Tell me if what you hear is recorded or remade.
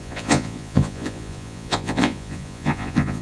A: remade